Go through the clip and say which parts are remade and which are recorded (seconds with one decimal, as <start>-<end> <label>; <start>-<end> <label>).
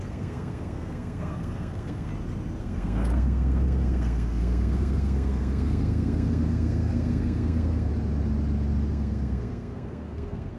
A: 0.0-2.1 remade; 2.1-2.6 recorded; 2.6-7.9 remade; 7.9-8.9 recorded; 8.9-10.6 remade